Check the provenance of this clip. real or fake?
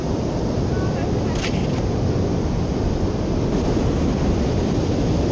real